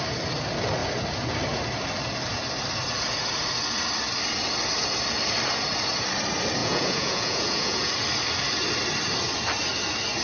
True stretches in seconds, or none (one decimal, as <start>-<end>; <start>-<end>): 0.0-6.6; 7.9-10.2

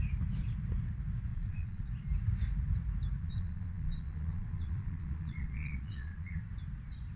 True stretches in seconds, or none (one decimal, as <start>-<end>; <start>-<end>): 0.0-1.3; 1.9-3.2; 6.4-7.2